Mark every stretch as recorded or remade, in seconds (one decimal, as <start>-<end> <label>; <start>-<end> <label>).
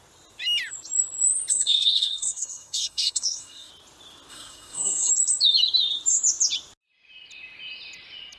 0.0-1.5 recorded; 1.5-3.7 remade; 3.7-4.3 recorded; 4.3-5.1 remade; 5.1-8.4 recorded